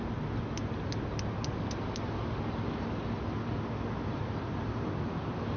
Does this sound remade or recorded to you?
recorded